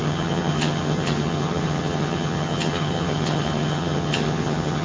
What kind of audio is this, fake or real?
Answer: fake